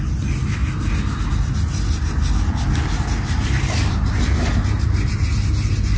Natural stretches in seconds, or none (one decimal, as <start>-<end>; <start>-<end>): 0.0-6.0